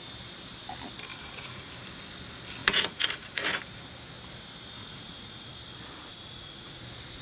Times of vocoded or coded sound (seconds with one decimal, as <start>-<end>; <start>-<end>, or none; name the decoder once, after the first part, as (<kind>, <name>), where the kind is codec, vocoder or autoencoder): 1.1-1.7 (vocoder, Vocos); 2.6-3.6; 4.8-5.5; 6.1-6.8